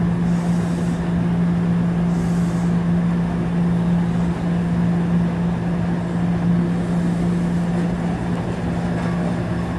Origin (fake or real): real